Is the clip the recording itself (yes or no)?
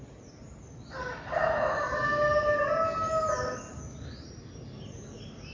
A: yes